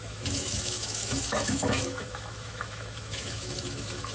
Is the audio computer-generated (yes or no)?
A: yes